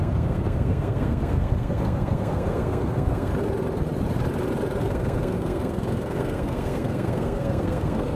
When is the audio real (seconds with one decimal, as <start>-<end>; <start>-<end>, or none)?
3.3-4.8